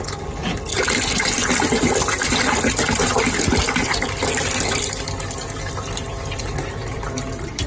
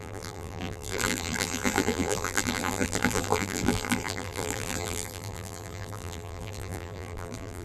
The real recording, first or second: first